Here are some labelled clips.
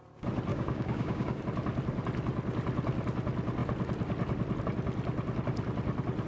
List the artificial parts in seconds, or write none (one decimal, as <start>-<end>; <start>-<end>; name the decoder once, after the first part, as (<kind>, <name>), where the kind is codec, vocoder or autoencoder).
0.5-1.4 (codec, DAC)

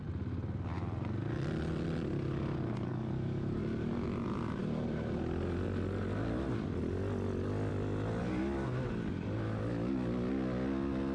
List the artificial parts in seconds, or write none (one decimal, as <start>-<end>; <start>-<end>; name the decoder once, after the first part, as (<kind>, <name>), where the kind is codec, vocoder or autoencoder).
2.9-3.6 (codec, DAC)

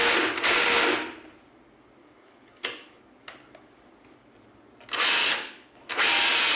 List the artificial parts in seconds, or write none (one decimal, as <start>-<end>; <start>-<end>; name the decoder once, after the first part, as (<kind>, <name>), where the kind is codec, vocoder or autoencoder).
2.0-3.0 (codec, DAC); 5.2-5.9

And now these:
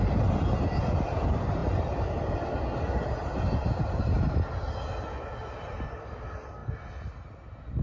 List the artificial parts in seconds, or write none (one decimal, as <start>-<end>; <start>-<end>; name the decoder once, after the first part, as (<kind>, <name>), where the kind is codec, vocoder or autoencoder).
none

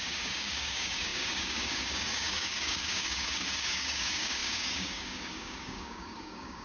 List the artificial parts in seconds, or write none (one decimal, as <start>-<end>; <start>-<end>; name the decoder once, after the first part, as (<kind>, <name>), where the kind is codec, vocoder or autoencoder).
0.0-6.6 (codec, DAC)

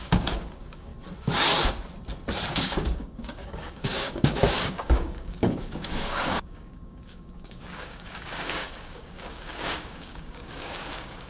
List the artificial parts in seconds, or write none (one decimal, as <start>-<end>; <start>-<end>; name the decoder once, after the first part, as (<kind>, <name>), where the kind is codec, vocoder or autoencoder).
0.0-0.9 (codec, DAC); 2.5-11.3